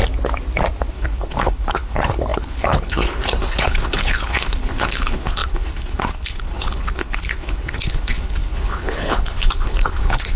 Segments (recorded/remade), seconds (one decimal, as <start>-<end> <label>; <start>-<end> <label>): 0.0-0.9 recorded; 0.9-10.4 remade